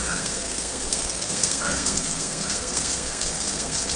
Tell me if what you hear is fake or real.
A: fake